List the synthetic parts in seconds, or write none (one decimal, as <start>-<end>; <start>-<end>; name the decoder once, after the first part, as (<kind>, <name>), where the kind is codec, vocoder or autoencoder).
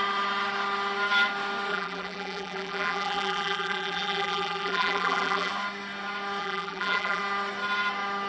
1.7-5.5 (vocoder, BigVGAN v2); 6.4-7.2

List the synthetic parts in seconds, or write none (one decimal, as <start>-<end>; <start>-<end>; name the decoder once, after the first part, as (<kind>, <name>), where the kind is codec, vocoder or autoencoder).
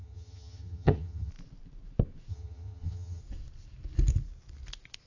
0.0-1.3 (vocoder, HiFi-GAN); 2.3-3.2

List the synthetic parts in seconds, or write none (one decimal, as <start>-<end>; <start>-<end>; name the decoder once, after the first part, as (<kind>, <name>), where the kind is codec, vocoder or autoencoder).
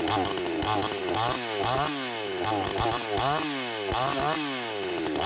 none